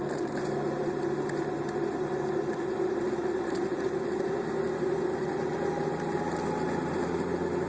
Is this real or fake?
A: real